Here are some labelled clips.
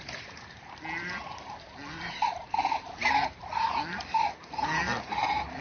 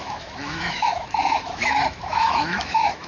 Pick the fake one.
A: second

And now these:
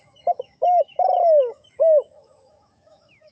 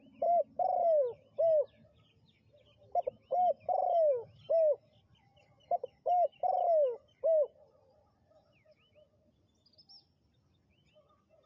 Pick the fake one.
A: first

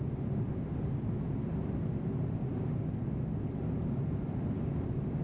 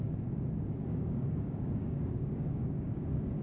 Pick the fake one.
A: second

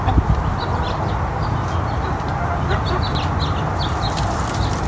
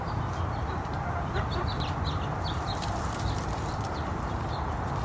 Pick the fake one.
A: second